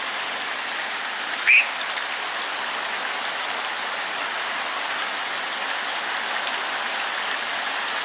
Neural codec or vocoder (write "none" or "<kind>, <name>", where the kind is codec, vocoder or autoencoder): none